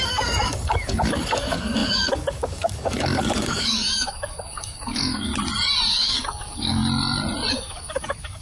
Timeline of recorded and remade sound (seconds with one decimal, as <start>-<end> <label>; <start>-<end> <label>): 0.0-5.3 remade; 5.3-5.9 recorded; 5.9-6.8 remade; 6.8-7.5 recorded; 7.5-8.4 remade